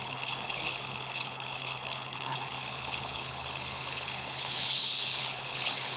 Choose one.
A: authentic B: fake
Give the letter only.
B